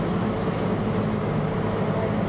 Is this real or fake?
real